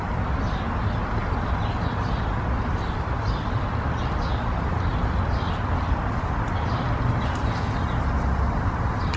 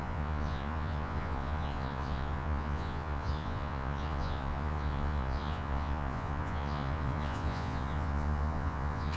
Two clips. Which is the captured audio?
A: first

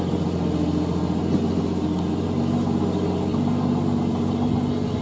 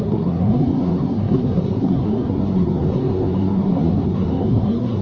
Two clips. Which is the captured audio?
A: first